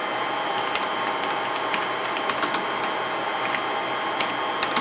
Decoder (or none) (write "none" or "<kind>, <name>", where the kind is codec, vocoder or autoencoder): none